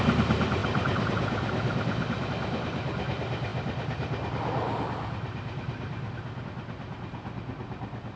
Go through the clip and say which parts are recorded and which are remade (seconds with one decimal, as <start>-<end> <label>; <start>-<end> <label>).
0.0-8.2 recorded